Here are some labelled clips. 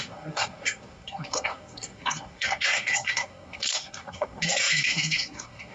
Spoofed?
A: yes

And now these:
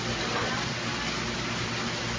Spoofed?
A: no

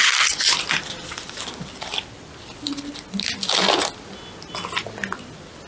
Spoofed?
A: no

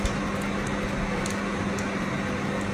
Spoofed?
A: no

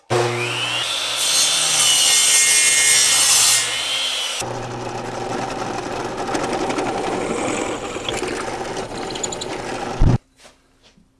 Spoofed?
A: no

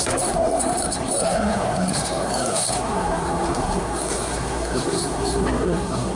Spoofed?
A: yes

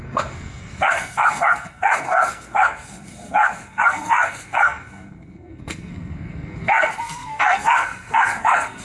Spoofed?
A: yes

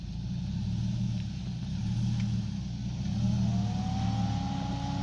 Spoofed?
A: no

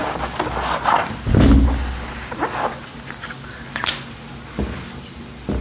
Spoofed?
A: no